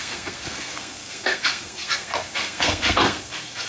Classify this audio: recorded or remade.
remade